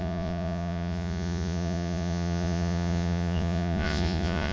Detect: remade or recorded remade